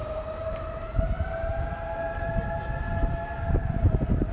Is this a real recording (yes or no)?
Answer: yes